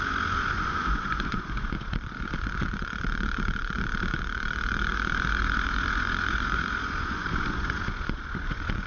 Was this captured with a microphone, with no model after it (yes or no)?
no